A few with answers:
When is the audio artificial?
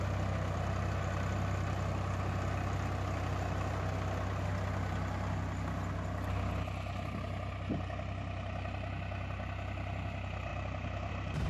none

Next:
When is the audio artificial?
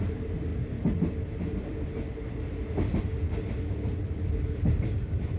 none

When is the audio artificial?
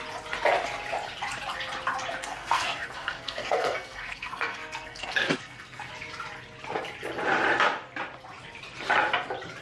2.2-5.9 (codec, SNAC)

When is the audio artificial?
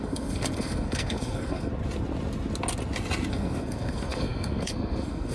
0.0-1.7 (codec, SNAC); 3.3-5.3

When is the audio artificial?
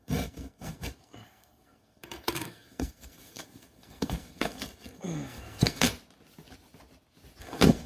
0.0-5.9 (codec, SNAC); 7.4-7.9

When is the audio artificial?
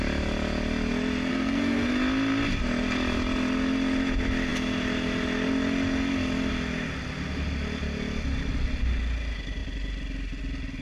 1.3-1.9 (codec, SNAC)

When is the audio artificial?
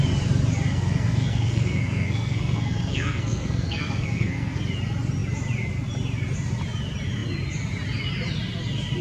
0.7-4.6 (codec, SNAC)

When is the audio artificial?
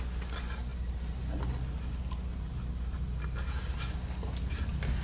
none